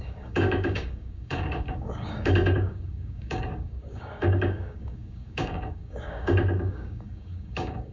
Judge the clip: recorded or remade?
remade